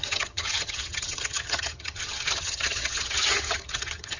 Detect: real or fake fake